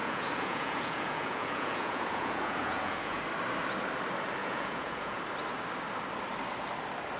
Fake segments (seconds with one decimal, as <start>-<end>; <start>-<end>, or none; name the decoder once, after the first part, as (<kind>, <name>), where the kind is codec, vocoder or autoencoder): 0.0-3.2 (vocoder, Vocos); 4.4-5.2